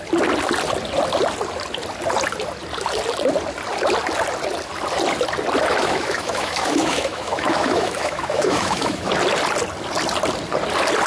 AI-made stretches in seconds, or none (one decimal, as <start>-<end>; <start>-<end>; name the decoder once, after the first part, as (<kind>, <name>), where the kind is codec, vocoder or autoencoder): 5.8-9.1 (autoencoder, DAC-VAE)